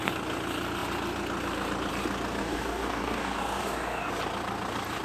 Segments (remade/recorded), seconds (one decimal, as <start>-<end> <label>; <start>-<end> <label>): 0.0-2.4 recorded; 2.4-4.1 remade; 4.1-5.0 recorded